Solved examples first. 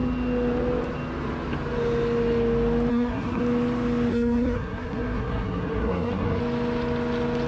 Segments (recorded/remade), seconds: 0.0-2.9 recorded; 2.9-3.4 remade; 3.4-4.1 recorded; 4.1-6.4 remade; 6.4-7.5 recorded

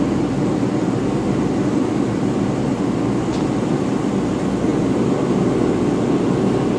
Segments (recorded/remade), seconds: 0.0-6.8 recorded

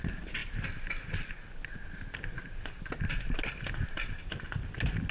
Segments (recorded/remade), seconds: 0.0-5.1 recorded